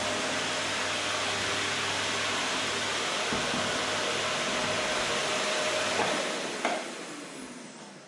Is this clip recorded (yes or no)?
yes